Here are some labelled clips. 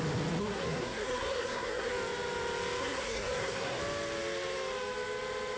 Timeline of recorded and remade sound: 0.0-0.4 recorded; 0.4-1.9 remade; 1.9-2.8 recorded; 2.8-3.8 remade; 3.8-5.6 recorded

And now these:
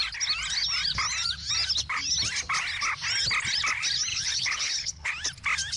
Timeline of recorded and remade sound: 0.0-4.1 recorded; 4.1-5.1 remade; 5.1-5.8 recorded

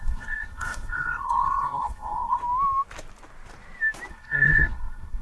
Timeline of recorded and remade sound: 0.0-2.4 remade; 2.4-4.1 recorded; 4.1-5.2 remade

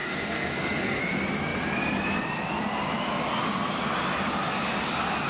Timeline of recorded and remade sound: 0.0-1.0 remade; 1.0-5.3 recorded

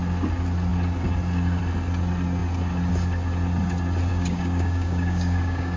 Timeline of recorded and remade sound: 0.0-4.1 recorded; 4.1-5.8 remade

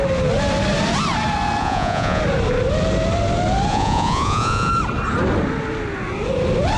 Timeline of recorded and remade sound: 0.0-1.6 recorded; 1.6-2.2 remade; 2.2-3.7 recorded; 3.7-4.7 remade; 4.7-6.8 recorded

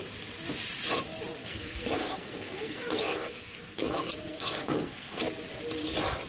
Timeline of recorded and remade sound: 0.0-1.4 recorded; 1.4-5.2 remade; 5.2-6.3 recorded